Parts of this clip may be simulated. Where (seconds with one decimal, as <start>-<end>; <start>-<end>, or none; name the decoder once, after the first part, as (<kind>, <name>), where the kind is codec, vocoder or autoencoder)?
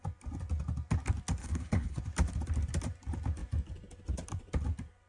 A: 1.4-2.0 (codec, HILCodec)